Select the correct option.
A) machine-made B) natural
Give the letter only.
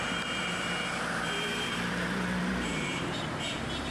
A